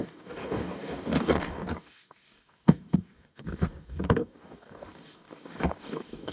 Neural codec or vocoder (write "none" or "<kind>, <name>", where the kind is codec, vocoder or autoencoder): codec, DAC